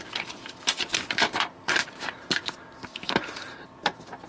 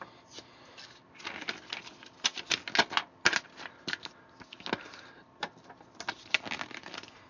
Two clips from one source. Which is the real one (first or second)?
second